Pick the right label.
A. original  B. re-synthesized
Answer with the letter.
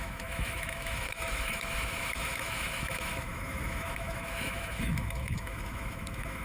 B